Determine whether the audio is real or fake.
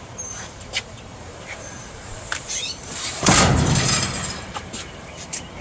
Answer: fake